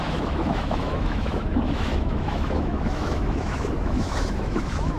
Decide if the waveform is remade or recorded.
remade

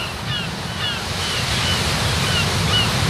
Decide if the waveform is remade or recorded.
recorded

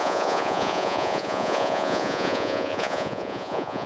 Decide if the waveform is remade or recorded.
remade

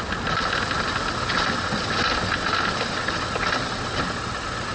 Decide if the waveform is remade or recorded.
recorded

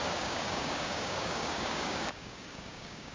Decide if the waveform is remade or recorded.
remade